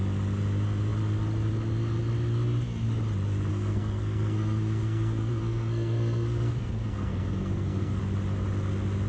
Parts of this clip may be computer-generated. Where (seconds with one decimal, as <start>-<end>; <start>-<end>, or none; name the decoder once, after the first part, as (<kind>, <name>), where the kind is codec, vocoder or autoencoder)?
3.5-8.0 (codec, SNAC)